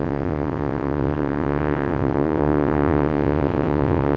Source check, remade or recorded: remade